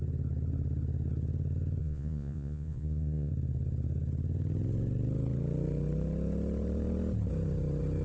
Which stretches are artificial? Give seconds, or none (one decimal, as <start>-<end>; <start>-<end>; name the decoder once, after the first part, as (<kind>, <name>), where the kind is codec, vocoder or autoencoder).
1.8-3.3 (vocoder, Vocos)